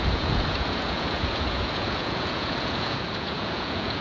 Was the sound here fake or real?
fake